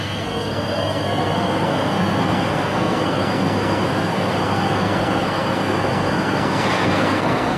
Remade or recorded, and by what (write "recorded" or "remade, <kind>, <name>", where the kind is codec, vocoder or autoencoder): remade, codec, SNAC